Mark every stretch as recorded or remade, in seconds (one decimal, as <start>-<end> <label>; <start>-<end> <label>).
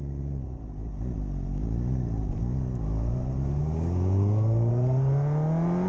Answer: 0.0-3.6 recorded; 3.6-4.7 remade; 4.7-5.9 recorded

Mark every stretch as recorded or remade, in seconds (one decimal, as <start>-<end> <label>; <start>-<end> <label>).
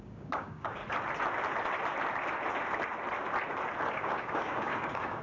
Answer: 0.0-0.8 remade; 0.8-3.9 recorded; 3.9-5.2 remade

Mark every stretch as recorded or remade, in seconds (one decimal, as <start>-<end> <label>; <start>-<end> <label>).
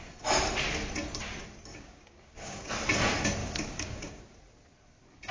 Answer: 0.0-1.7 recorded; 1.7-2.7 remade; 2.7-3.4 recorded; 3.4-4.2 remade; 4.2-5.3 recorded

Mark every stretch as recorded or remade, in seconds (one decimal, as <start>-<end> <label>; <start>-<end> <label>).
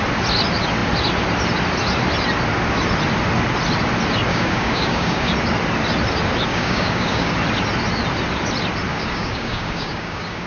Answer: 0.0-4.3 recorded; 4.3-5.3 remade; 5.3-6.5 recorded; 6.5-7.3 remade; 7.3-8.9 recorded; 8.9-10.5 remade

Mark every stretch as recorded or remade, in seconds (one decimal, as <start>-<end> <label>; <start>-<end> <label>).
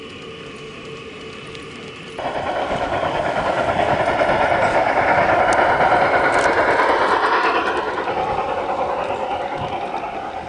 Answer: 0.0-2.6 recorded; 2.6-4.0 remade; 4.0-4.7 recorded; 4.7-5.4 remade; 5.4-10.5 recorded